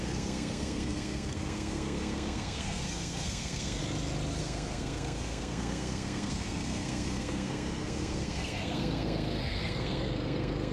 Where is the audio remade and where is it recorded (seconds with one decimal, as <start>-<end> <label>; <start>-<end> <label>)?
0.0-3.8 remade; 3.8-4.4 recorded; 4.4-10.7 remade

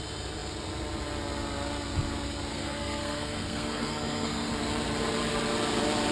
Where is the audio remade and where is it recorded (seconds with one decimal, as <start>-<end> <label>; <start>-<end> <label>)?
0.0-2.5 recorded; 2.5-4.5 remade; 4.5-6.1 recorded

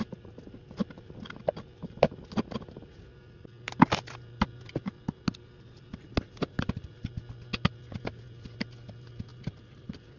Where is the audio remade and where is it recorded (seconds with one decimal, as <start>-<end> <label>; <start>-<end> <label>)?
0.0-10.2 recorded

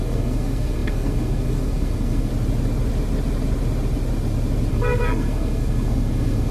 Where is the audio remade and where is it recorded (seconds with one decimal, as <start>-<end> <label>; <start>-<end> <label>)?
0.0-2.3 remade; 2.3-4.7 recorded; 4.7-6.5 remade

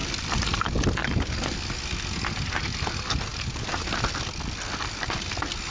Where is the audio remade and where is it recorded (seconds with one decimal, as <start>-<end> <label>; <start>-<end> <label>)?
0.0-5.7 recorded

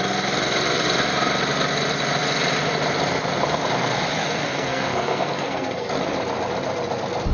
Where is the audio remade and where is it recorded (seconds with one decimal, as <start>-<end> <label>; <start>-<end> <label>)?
0.0-4.2 recorded; 4.2-5.9 remade; 5.9-7.3 recorded